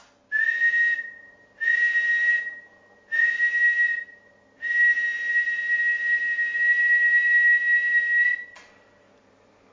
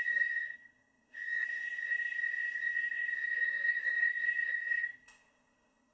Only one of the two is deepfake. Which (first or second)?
second